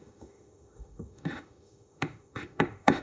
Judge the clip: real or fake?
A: fake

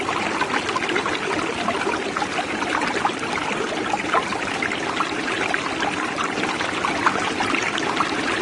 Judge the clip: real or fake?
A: real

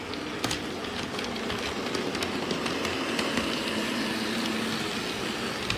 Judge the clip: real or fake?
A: real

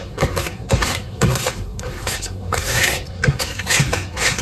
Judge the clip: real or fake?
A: fake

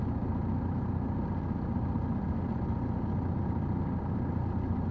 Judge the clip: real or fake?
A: real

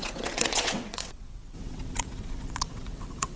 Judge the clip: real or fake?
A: fake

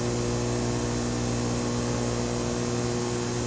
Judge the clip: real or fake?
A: real